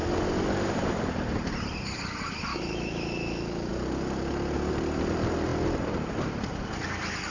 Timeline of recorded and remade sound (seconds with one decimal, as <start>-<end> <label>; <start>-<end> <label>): 0.0-2.5 recorded; 2.5-3.7 remade; 3.7-7.3 recorded